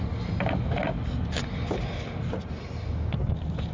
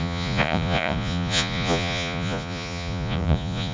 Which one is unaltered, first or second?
first